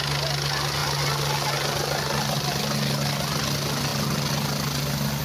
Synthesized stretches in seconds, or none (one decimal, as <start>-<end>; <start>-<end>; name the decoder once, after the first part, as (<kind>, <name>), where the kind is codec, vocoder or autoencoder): none